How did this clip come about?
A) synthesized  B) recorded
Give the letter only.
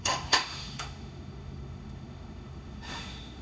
A